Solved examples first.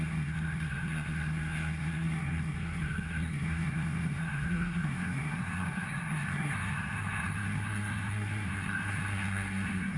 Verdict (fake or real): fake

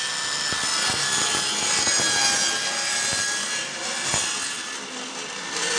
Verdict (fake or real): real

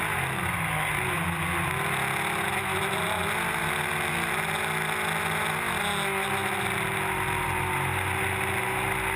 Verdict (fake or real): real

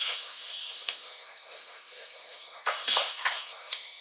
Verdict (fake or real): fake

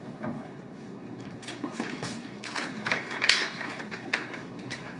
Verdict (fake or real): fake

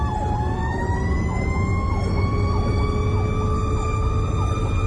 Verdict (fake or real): real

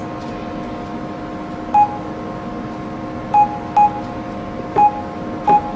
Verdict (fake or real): real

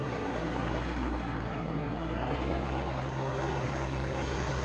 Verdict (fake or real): fake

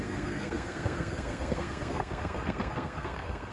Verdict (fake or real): fake